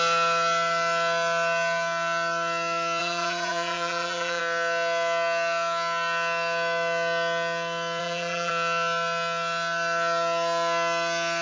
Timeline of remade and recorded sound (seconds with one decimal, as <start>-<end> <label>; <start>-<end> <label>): 0.0-3.0 recorded; 3.0-4.4 remade; 4.4-8.0 recorded; 8.0-8.5 remade; 8.5-11.4 recorded